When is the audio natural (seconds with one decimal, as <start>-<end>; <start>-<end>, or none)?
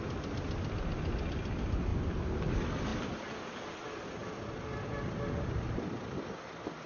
0.0-6.9